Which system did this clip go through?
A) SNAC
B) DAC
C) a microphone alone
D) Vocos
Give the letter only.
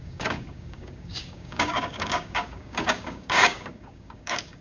B